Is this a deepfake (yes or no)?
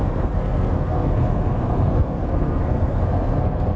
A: yes